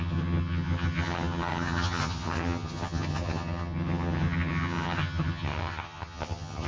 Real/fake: fake